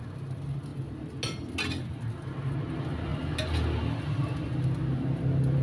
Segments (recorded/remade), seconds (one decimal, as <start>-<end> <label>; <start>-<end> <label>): 0.0-5.6 recorded